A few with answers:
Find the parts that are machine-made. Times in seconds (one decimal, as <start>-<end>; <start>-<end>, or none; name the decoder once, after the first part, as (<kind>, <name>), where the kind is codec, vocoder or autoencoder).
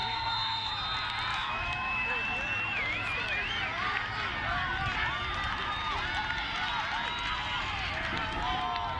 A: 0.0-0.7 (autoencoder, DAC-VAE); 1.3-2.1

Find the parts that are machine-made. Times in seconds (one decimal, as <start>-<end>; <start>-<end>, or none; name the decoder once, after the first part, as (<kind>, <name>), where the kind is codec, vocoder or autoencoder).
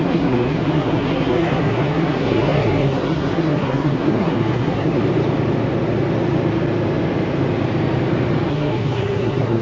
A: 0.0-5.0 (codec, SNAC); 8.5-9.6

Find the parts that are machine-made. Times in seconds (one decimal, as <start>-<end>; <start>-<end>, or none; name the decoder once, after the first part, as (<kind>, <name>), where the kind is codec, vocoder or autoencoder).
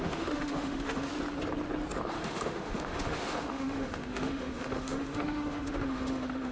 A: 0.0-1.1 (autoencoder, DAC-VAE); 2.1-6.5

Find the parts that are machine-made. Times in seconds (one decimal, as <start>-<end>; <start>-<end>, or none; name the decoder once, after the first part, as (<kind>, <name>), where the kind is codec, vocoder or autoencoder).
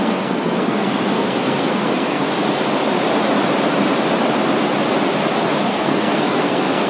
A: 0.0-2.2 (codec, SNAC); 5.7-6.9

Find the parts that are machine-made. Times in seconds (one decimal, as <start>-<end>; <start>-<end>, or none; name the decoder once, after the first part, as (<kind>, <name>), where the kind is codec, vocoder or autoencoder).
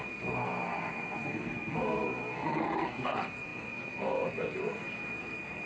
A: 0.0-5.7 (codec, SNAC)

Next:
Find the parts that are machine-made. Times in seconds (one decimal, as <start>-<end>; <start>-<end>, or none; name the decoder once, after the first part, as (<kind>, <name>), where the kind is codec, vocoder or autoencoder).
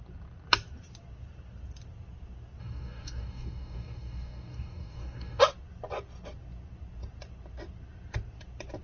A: 2.6-5.4 (codec, DAC)